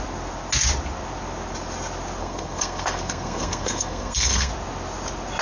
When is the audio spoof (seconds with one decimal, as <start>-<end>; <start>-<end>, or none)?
2.2-4.5